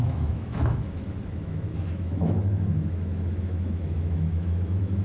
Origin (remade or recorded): remade